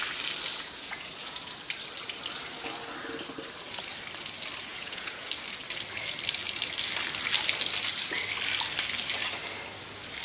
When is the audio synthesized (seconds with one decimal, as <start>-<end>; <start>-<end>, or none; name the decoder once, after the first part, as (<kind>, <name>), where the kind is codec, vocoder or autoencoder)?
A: 0.5-1.5 (vocoder, Vocos); 4.7-5.3